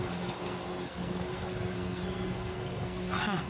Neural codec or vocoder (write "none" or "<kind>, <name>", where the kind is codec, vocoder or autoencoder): codec, SNAC